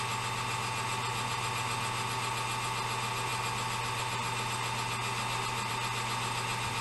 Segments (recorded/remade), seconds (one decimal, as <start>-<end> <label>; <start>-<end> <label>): 0.0-6.8 recorded